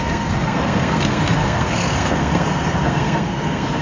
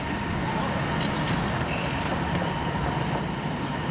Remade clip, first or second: first